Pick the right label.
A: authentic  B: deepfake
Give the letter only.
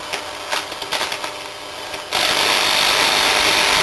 A